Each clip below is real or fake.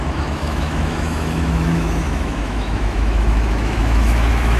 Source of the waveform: fake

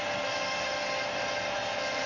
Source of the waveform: real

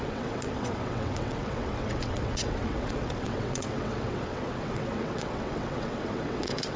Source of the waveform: fake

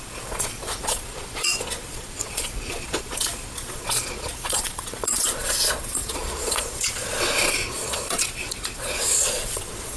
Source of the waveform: fake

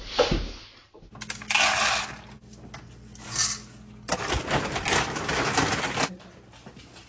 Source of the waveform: real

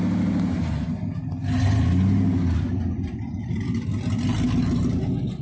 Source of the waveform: real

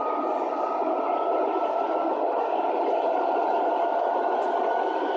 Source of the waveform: real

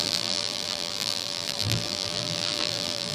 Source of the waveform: fake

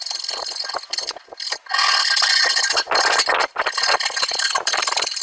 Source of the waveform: real